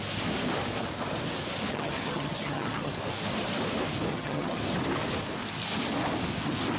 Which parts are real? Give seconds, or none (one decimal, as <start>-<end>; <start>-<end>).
0.0-1.7; 2.9-4.1; 4.6-6.8